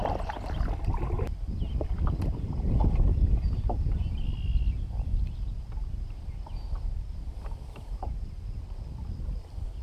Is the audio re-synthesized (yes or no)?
yes